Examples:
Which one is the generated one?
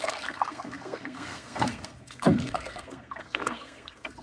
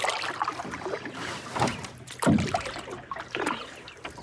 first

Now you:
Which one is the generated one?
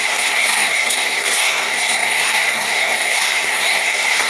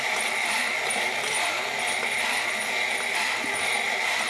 first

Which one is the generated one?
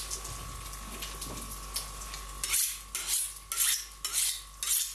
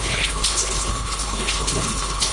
second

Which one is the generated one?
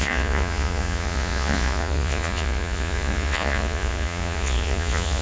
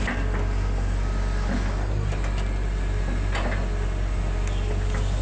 first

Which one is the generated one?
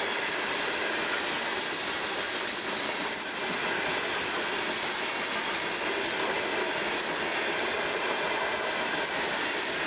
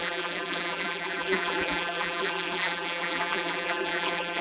second